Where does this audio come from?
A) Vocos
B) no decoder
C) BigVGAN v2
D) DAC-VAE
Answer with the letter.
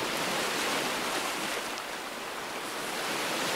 B